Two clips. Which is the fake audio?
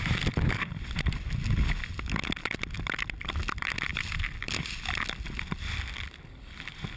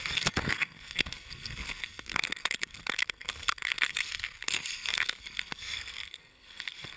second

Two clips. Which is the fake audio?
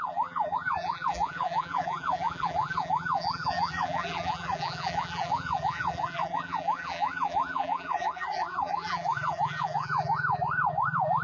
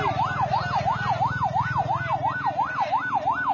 first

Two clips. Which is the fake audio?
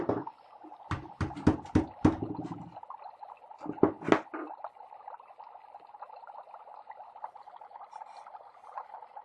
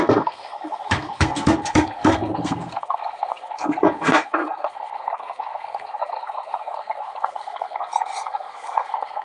second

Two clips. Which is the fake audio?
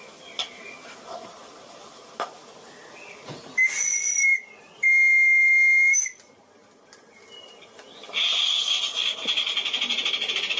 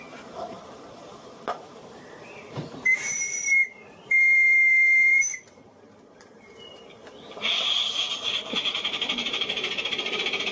second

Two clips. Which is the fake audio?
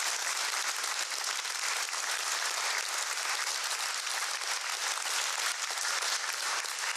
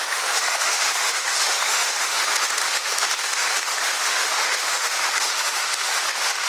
second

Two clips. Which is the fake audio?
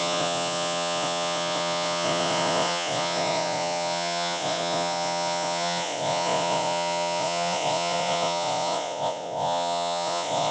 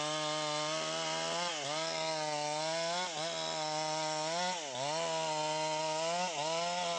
first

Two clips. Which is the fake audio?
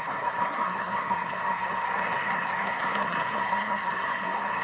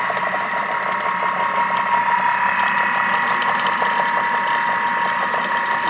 first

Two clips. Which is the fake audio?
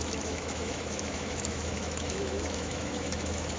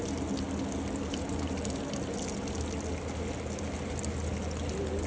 first